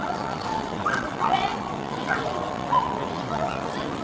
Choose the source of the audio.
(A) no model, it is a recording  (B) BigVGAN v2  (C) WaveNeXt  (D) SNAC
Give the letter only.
C